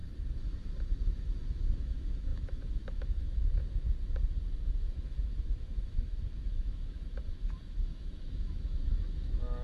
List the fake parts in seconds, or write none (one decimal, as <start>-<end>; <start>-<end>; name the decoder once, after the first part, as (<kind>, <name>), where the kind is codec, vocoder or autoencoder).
0.8-3.6 (autoencoder, DAC-VAE); 4.7-9.6